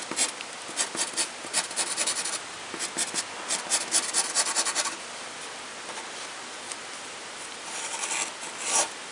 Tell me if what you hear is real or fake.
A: real